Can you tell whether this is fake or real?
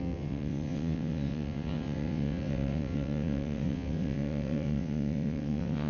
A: fake